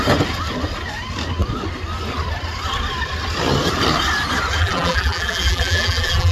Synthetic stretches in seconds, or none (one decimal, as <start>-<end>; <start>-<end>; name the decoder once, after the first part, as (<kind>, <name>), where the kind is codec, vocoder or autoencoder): 4.6-6.3 (vocoder, BigVGAN v2)